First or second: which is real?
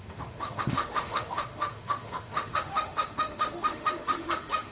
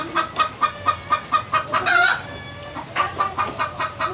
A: second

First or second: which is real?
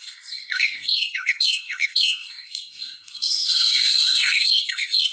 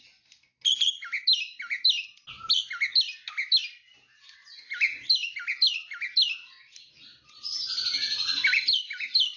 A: second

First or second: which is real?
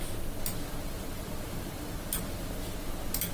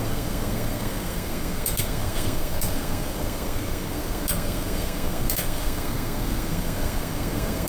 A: first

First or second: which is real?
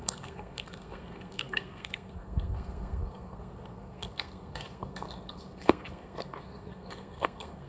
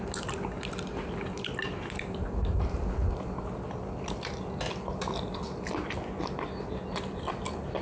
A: second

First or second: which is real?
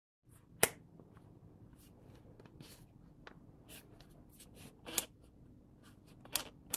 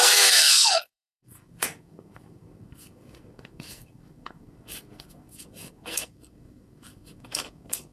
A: first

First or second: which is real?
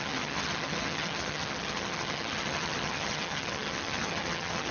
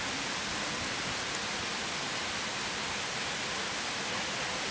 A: second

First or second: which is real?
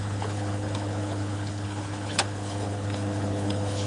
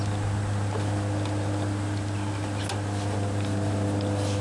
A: second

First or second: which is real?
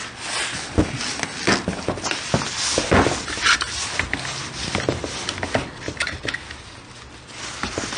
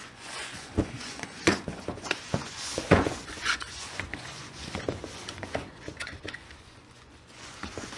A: first